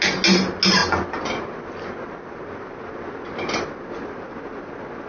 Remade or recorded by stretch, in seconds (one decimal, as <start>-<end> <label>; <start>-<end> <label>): 0.0-5.1 recorded